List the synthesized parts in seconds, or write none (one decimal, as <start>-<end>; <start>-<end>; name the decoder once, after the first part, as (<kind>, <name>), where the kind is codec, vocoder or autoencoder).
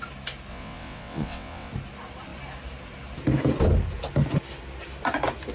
0.5-1.7 (vocoder, WaveNeXt)